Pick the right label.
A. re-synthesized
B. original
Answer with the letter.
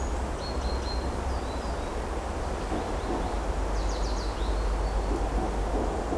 B